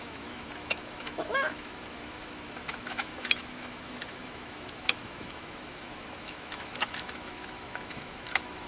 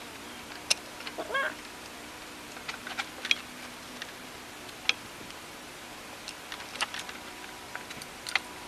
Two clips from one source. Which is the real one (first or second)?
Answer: second